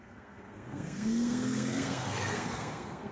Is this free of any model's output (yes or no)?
no